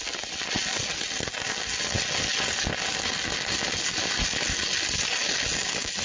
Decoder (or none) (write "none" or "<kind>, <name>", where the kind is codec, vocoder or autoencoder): none